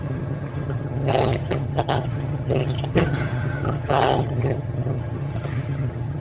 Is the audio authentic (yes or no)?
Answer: no